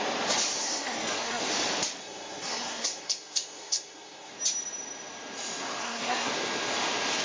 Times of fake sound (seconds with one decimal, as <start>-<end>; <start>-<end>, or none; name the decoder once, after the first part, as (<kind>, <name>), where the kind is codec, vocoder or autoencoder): 0.6-1.4 (codec, SNAC); 2.0-4.3; 5.8-6.3

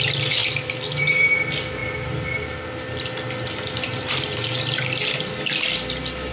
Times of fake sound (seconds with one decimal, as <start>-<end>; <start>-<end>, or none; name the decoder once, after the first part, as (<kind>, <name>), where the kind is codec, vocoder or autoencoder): none

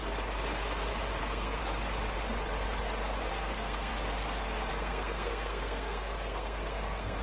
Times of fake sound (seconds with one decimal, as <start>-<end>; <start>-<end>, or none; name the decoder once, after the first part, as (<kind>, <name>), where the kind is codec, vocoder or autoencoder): 1.2-1.6 (codec, SNAC); 3.3-3.9; 4.7-7.2

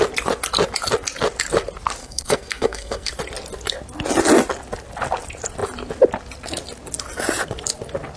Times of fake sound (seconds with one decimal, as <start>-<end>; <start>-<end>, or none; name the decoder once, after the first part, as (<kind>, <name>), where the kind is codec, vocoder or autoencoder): 2.0-3.1 (codec, SNAC)

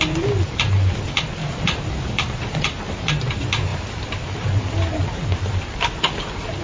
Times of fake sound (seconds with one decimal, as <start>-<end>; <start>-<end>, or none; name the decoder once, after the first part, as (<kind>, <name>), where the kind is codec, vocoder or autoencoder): none

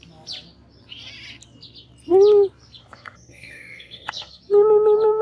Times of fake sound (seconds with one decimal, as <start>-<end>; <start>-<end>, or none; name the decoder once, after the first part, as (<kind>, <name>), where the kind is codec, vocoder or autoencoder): 2.8-4.4 (codec, SNAC)

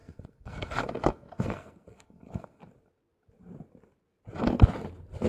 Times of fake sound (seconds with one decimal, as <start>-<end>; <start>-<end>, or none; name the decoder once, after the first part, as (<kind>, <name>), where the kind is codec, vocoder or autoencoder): 0.0-2.6 (codec, SNAC)

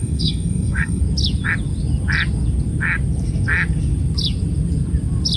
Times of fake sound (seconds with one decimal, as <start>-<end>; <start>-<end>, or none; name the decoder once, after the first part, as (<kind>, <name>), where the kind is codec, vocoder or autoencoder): 0.0-1.0 (codec, SNAC)